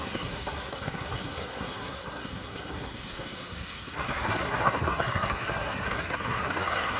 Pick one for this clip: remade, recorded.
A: remade